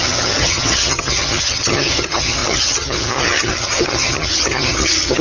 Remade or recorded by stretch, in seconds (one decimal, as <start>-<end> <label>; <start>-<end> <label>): 0.0-5.2 remade